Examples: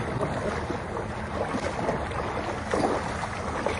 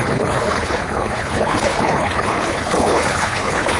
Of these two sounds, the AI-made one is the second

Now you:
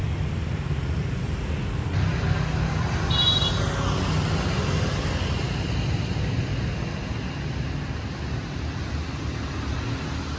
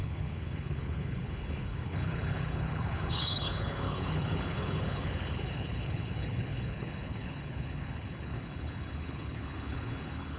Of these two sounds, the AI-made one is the second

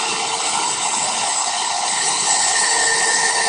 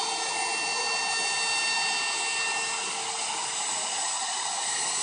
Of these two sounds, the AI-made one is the first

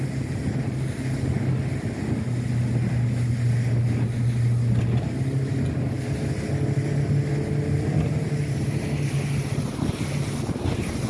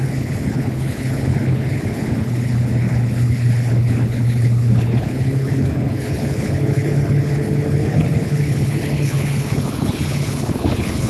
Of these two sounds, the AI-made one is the second